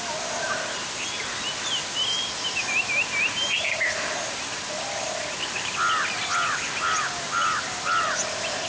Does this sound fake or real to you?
real